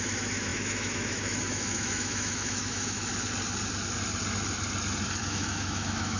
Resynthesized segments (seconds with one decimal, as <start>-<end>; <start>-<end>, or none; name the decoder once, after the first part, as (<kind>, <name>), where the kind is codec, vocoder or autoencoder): 0.0-3.1 (autoencoder, DAC-VAE); 5.2-6.2